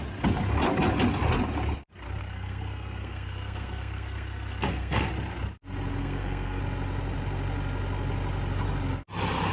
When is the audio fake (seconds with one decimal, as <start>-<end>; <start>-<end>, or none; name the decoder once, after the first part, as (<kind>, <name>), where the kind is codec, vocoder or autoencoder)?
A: 2.2-5.1 (codec, SNAC); 6.0-6.6